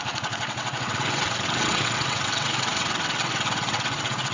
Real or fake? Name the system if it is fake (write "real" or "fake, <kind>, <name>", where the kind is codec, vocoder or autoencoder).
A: fake, vocoder, WaveNeXt